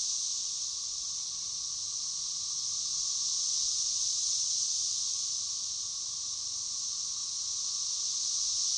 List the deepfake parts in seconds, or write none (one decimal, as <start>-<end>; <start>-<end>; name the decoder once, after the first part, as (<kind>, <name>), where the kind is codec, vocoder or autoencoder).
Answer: none